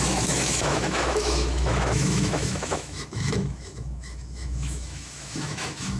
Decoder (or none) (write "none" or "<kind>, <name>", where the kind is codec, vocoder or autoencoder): autoencoder, DAC-VAE